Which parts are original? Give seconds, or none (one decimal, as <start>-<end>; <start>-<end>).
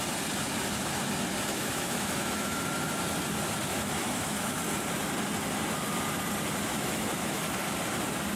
0.0-1.5; 2.6-3.7; 4.6-6.7; 7.4-8.4